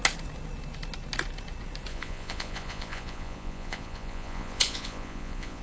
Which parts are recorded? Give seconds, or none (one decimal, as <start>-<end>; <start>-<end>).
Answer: 0.0-1.9